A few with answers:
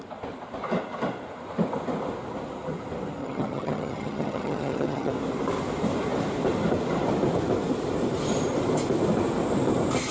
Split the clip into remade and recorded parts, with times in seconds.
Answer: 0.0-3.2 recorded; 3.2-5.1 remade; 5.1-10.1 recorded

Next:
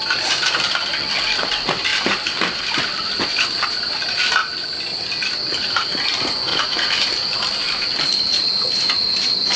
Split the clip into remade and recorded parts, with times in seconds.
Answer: 0.0-1.9 recorded; 1.9-2.6 remade; 2.6-4.4 recorded; 4.4-5.4 remade; 5.4-6.5 recorded; 6.5-9.6 remade

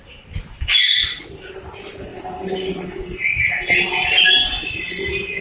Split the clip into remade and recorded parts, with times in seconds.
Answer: 0.0-5.4 recorded

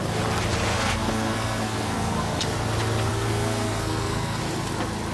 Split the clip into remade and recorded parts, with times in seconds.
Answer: 0.0-0.7 recorded; 0.7-2.4 remade; 2.4-3.1 recorded; 3.1-4.4 remade; 4.4-5.1 recorded

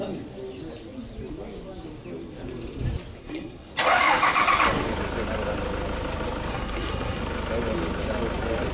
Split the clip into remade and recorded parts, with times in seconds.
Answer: 0.0-3.2 recorded; 3.2-3.7 remade; 3.7-6.5 recorded; 6.5-7.2 remade; 7.2-8.7 recorded

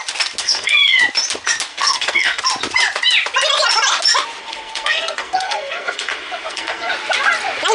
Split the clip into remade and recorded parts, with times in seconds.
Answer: 0.0-0.4 recorded; 0.4-1.0 remade; 1.0-1.7 recorded; 1.7-2.4 remade; 2.4-4.4 recorded; 4.4-6.9 remade; 6.9-7.7 recorded